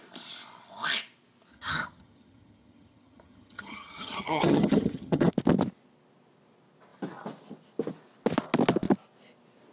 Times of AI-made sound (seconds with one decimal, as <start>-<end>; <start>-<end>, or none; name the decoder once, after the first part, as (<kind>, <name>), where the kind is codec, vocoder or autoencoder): 1.5-5.3 (vocoder, HiFi-GAN)